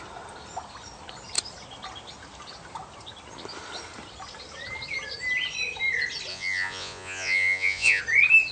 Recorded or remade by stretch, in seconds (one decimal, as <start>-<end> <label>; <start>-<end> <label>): 0.0-6.3 recorded; 6.3-8.0 remade; 8.0-8.5 recorded